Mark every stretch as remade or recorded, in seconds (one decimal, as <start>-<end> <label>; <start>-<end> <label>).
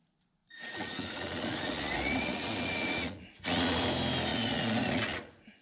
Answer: 0.0-0.4 recorded; 0.4-3.8 remade; 3.8-4.3 recorded; 4.3-5.6 remade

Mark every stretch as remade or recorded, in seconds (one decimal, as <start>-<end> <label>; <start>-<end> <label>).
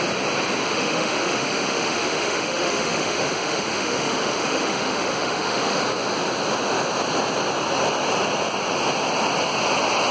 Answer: 0.0-0.6 recorded; 0.6-5.8 remade; 5.8-10.1 recorded